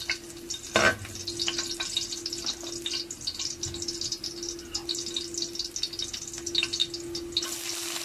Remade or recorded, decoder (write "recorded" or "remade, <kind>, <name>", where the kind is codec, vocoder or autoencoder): recorded